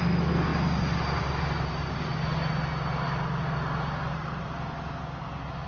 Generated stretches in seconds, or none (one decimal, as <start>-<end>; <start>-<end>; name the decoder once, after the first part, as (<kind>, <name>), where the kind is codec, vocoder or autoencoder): none